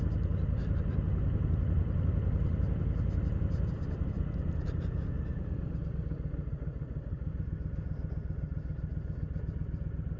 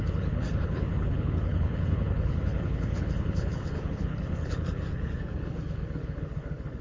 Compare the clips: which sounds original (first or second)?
first